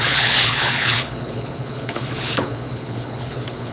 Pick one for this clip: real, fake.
fake